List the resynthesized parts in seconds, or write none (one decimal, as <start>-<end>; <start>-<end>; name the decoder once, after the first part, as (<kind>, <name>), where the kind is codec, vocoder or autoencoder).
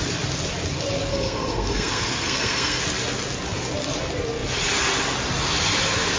1.1-2.8 (codec, SNAC)